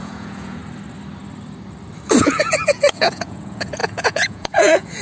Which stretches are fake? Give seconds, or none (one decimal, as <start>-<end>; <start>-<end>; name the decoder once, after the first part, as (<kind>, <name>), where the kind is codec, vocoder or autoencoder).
0.0-0.6 (vocoder, Vocos); 2.2-5.0